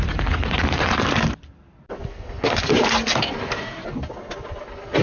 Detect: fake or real real